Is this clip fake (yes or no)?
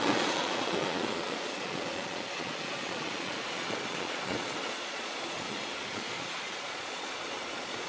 yes